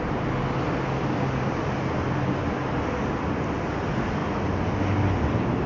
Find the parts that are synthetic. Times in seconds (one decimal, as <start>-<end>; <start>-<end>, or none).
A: none